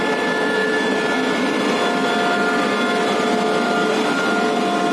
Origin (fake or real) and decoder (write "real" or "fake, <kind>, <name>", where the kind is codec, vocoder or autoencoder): real